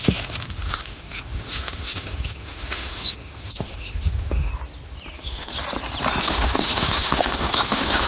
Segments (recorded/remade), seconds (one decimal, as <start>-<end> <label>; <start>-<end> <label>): 0.0-4.5 remade; 4.5-5.1 recorded; 5.1-5.5 remade; 5.5-6.2 recorded; 6.2-8.1 remade